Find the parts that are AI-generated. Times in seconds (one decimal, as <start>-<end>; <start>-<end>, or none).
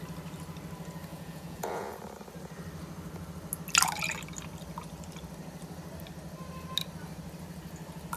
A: 1.1-2.0